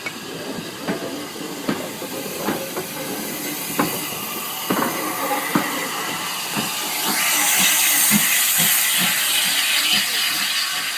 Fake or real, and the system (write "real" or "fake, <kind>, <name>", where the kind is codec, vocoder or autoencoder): real